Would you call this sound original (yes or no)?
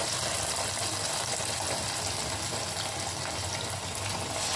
yes